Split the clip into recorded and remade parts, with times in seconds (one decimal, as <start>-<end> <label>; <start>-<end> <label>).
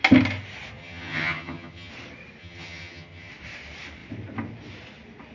0.0-0.8 recorded; 0.8-1.9 remade; 1.9-2.4 recorded; 2.4-3.3 remade; 3.3-5.3 recorded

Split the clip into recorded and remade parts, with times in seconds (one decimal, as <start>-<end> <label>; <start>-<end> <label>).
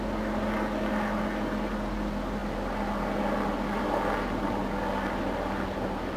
0.0-6.2 recorded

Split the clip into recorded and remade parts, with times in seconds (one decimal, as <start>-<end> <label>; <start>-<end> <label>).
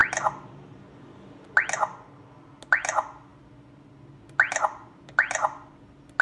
0.0-6.2 recorded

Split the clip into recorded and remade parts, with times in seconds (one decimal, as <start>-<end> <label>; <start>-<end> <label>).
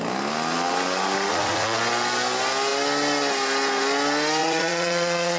0.0-1.3 recorded; 1.3-1.8 remade; 1.8-4.4 recorded; 4.4-5.4 remade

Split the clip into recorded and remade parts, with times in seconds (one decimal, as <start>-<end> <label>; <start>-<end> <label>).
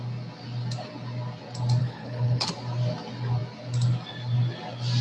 0.0-1.8 recorded; 1.8-2.5 remade; 2.5-5.0 recorded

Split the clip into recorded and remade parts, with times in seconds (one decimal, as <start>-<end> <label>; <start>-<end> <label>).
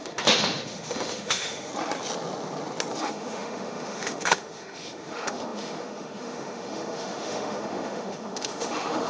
0.0-1.7 remade; 1.7-3.0 recorded; 3.0-9.1 remade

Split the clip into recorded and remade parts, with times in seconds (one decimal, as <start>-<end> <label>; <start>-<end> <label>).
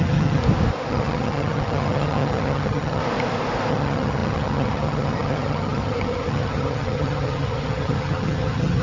0.0-0.4 remade; 0.4-0.9 recorded; 0.9-3.0 remade; 3.0-3.7 recorded; 3.7-8.8 remade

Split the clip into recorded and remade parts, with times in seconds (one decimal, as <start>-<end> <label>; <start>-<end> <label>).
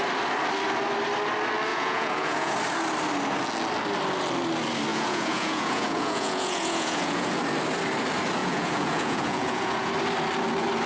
0.0-1.7 recorded; 1.7-2.5 remade; 2.5-4.9 recorded; 4.9-7.4 remade; 7.4-8.4 recorded; 8.4-9.9 remade; 9.9-10.9 recorded